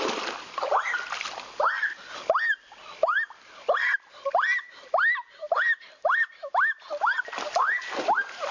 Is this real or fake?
real